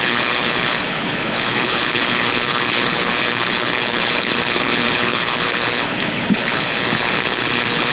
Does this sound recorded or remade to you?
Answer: remade